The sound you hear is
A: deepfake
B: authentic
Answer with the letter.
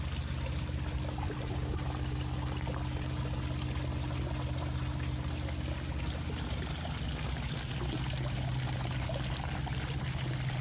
B